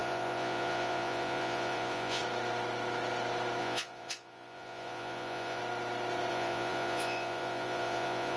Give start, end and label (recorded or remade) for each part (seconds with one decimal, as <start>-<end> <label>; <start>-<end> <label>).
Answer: 0.0-2.2 remade; 2.2-3.6 recorded; 3.6-5.6 remade; 5.6-6.3 recorded; 6.3-8.4 remade